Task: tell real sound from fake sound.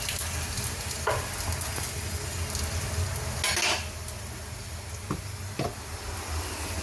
real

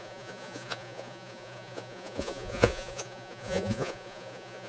fake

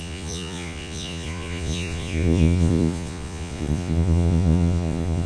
fake